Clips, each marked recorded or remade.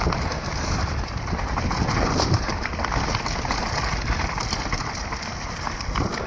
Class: recorded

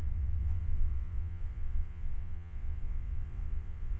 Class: remade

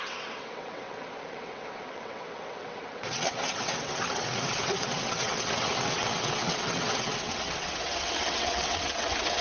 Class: remade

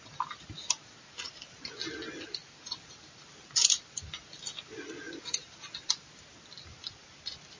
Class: recorded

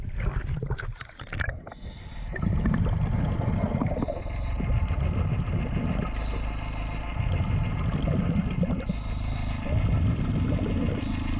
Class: recorded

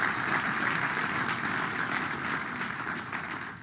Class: recorded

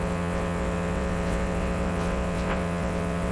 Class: remade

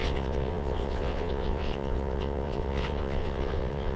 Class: remade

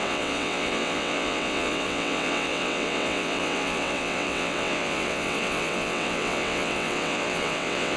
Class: remade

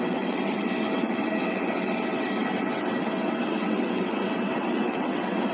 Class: remade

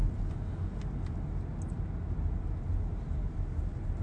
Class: recorded